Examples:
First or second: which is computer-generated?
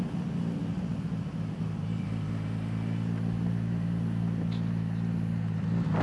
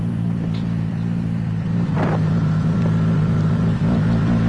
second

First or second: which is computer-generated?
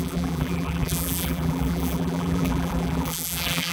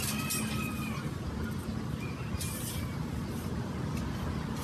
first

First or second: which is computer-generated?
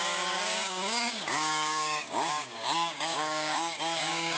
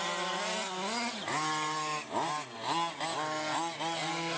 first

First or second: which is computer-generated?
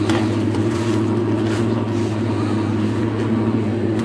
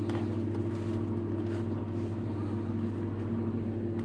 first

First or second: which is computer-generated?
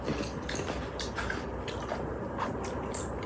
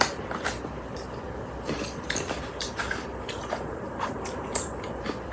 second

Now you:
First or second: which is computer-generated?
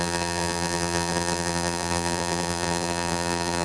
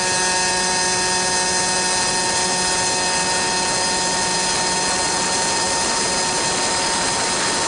first